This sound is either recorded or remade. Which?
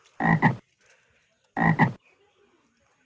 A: recorded